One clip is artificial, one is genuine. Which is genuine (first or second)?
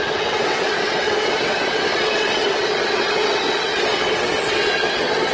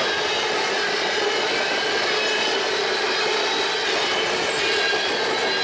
second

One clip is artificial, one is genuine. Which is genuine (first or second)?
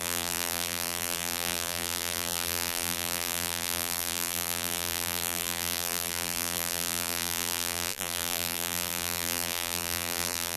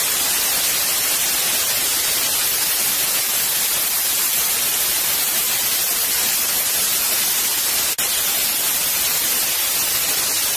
second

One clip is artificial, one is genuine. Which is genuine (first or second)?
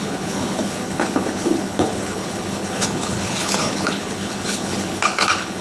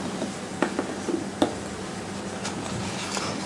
second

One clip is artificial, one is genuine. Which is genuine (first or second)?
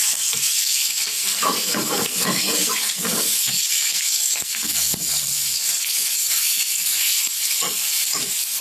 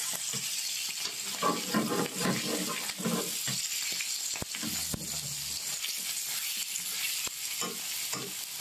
second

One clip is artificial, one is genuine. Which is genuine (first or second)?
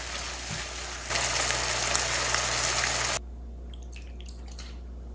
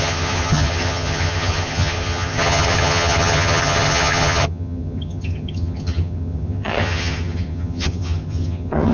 first